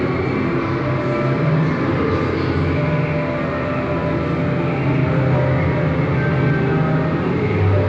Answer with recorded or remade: recorded